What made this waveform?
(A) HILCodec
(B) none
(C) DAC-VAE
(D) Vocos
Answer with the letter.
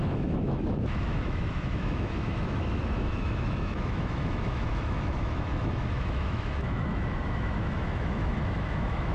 C